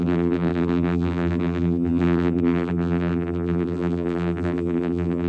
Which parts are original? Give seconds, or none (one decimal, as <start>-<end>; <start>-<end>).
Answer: none